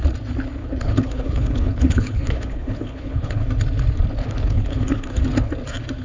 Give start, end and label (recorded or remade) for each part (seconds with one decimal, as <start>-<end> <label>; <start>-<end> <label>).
0.0-0.6 recorded; 0.6-3.5 remade; 3.5-4.2 recorded; 4.2-5.2 remade; 5.2-6.0 recorded